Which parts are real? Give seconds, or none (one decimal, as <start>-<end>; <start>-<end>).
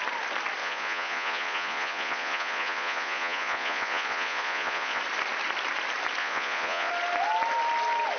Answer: 0.0-0.6; 5.0-6.2; 6.9-8.2